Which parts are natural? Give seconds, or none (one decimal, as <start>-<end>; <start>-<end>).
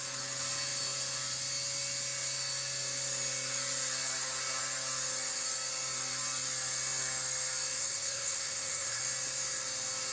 0.0-7.8; 9.0-10.1